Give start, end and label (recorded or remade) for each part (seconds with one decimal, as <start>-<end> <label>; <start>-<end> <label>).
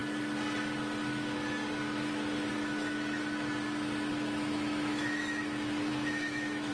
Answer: 0.0-2.5 recorded; 2.5-3.2 remade; 3.2-4.1 recorded; 4.1-6.7 remade